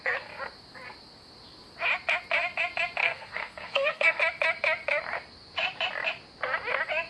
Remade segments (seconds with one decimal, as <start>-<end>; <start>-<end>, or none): 3.0-4.2